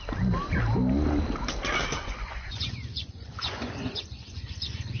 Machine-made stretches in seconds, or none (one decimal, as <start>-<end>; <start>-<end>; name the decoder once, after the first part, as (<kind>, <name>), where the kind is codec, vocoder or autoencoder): 1.9-5.0 (vocoder, Vocos)